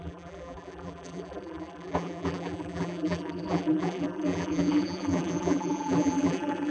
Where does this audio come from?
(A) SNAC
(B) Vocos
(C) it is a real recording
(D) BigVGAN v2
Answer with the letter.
D